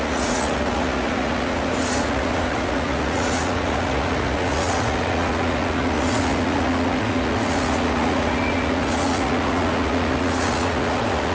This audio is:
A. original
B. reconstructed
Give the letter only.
B